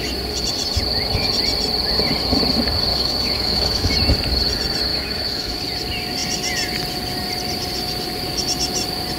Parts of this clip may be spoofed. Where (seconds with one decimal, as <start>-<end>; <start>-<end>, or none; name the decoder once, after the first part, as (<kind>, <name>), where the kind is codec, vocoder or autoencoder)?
2.9-3.9 (autoencoder, DAC-VAE); 4.9-5.6